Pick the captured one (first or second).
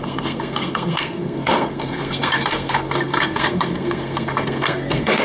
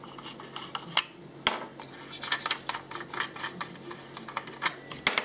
second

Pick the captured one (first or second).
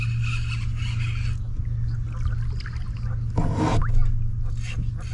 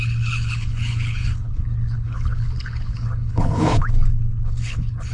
first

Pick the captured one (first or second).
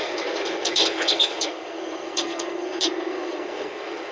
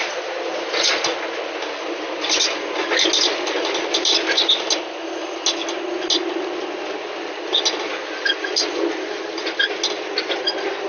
second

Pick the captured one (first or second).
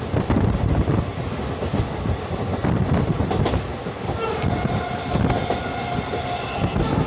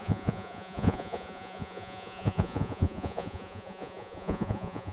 first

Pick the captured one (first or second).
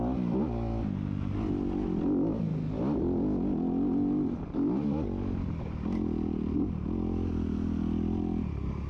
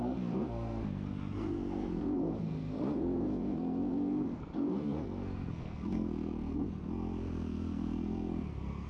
first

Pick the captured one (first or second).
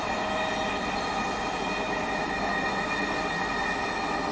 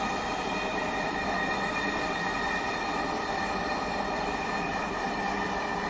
first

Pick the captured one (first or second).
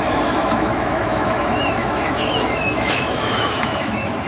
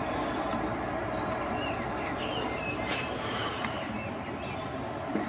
second